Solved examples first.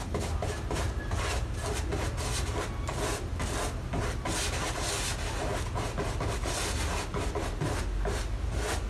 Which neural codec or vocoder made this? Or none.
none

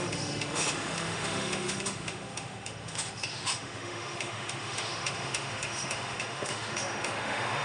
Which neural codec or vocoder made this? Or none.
autoencoder, DAC-VAE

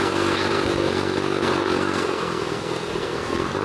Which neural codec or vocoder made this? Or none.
codec, SNAC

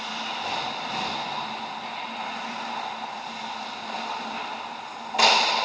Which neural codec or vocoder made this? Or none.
none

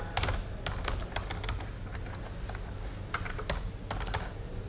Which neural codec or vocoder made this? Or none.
none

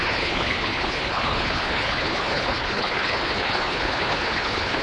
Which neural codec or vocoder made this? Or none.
codec, HILCodec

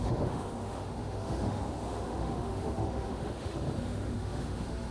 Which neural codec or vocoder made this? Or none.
autoencoder, DAC-VAE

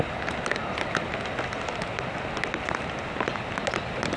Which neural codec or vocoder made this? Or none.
none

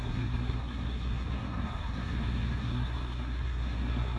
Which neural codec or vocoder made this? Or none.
codec, SNAC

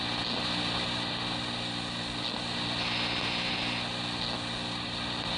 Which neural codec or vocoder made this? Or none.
none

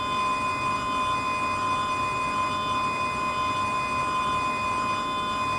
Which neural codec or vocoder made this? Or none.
none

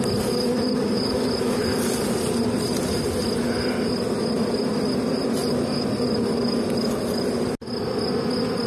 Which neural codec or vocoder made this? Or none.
none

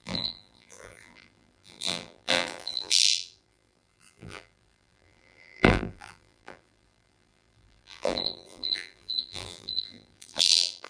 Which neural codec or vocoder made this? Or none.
vocoder, BigVGAN v2